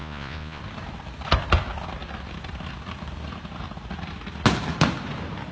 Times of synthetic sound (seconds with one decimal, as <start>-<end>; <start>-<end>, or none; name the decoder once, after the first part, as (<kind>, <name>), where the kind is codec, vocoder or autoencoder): 0.0-0.6 (vocoder, Vocos)